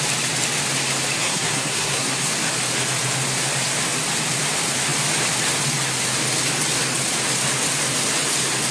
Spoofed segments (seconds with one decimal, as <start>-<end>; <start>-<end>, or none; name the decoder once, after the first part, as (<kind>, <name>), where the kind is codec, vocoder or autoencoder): 1.2-2.3 (codec, SNAC)

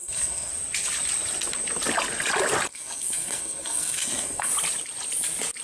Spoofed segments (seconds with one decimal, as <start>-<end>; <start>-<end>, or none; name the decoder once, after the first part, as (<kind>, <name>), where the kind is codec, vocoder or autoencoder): 0.0-0.5 (codec, SNAC); 2.7-4.5

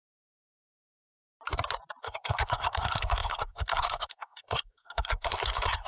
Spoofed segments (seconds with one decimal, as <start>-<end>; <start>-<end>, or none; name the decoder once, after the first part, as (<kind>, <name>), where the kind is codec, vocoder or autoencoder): 2.0-5.9 (codec, SNAC)

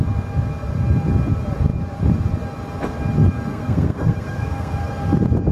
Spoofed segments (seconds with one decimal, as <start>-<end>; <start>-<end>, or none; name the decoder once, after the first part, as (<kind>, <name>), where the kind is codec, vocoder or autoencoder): 3.5-4.9 (codec, SNAC)

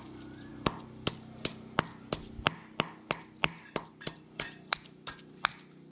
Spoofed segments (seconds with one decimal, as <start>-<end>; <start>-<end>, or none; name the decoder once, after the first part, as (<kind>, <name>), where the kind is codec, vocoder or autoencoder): none